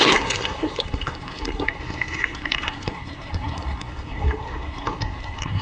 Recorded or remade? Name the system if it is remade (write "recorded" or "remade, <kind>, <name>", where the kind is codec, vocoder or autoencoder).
remade, codec, SNAC